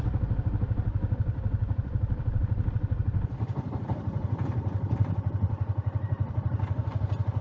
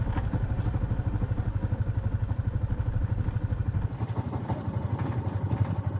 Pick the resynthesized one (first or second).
first